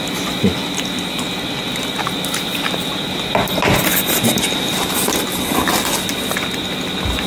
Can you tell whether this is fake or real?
real